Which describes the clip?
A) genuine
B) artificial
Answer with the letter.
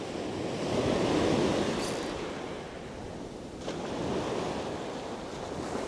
A